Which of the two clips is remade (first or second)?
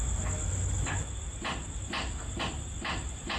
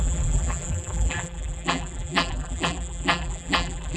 second